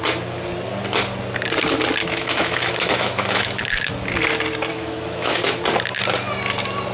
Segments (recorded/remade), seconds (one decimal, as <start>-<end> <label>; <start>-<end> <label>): 0.0-2.0 recorded; 2.0-3.9 remade; 3.9-4.7 recorded; 4.7-5.4 remade; 5.4-6.9 recorded